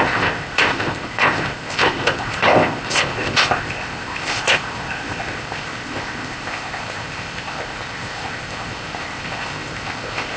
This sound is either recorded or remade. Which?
remade